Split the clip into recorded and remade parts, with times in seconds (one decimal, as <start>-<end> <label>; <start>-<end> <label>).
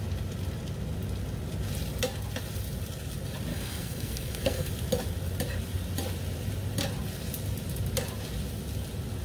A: 0.0-3.5 recorded; 3.5-4.7 remade; 4.7-9.2 recorded